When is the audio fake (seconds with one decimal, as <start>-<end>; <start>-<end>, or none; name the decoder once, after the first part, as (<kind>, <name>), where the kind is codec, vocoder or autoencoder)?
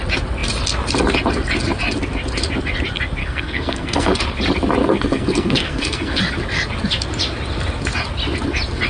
3.2-4.2 (codec, SNAC); 4.8-6.2